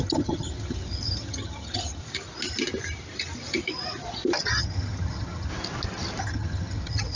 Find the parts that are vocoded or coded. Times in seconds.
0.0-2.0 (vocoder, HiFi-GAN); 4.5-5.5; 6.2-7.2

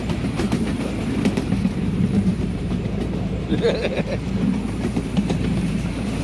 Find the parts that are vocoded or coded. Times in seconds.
0.0-0.7 (vocoder, BigVGAN v2); 1.3-6.2

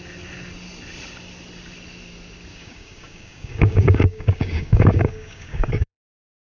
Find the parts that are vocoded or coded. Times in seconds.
2.5-6.5 (codec, DAC)